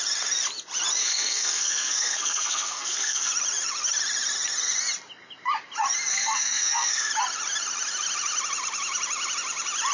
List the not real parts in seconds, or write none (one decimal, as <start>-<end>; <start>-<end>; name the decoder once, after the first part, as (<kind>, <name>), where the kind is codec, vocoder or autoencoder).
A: 1.0-3.3 (codec, SNAC); 6.1-7.1